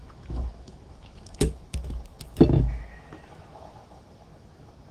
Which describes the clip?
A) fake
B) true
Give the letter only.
A